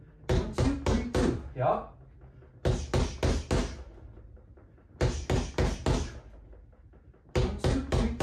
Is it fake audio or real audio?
real